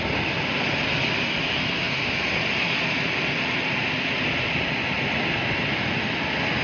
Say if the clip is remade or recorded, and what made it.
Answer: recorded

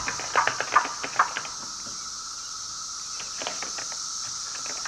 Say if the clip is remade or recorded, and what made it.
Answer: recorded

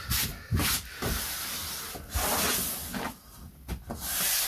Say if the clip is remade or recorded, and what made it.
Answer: recorded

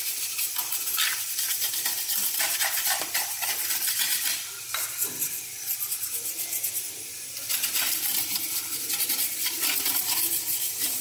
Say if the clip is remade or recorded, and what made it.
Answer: recorded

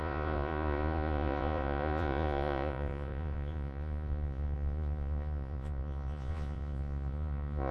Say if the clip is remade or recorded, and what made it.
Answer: remade, vocoder, Vocos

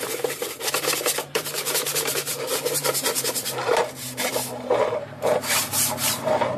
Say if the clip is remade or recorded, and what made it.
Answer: remade, vocoder, BigVGAN v2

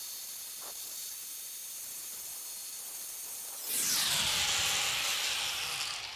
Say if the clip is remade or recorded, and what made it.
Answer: recorded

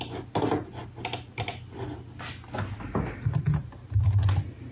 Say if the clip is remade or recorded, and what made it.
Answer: recorded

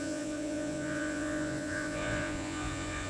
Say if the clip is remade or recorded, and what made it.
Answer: remade, vocoder, Vocos